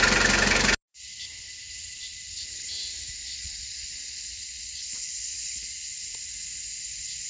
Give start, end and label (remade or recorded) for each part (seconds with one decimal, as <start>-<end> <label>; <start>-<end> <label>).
0.0-3.2 recorded; 3.2-5.9 remade; 5.9-7.3 recorded